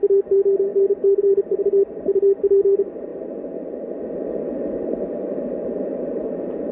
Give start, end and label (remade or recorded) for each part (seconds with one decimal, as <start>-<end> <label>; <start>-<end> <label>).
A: 0.0-3.1 remade; 3.1-4.8 recorded; 4.8-6.7 remade